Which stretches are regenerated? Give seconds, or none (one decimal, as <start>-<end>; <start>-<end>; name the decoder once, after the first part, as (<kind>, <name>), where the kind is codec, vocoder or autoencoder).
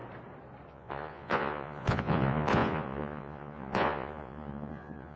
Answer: 0.7-5.2 (vocoder, Vocos)